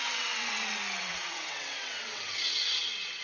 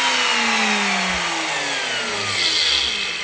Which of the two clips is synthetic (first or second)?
first